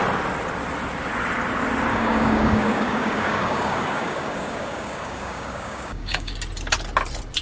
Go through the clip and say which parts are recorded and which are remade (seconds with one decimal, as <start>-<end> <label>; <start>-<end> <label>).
0.0-1.9 recorded; 1.9-6.3 remade; 6.3-7.4 recorded